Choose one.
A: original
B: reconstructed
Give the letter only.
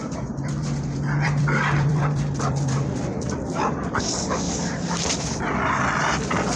B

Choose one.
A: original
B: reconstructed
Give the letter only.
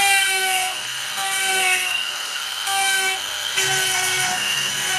B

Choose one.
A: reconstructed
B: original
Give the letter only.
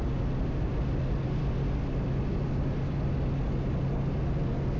B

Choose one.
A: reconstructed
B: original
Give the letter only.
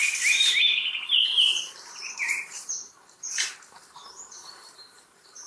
A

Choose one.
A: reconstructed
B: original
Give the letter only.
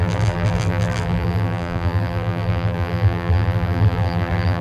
A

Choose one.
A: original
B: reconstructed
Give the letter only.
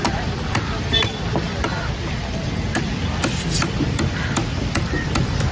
B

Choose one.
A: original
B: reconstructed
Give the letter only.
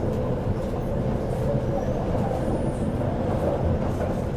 A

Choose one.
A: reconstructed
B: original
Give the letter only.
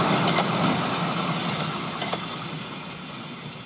B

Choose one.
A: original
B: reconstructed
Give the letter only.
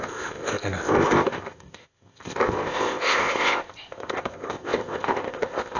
B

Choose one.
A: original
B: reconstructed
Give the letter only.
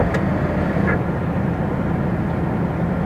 A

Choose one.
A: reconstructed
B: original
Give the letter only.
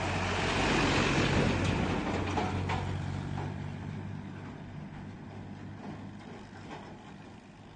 B